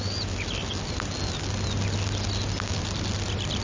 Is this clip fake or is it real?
real